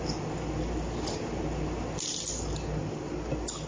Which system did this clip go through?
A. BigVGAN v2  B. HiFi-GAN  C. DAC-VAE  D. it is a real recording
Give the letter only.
D